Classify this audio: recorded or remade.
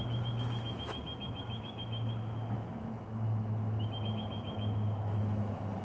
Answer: remade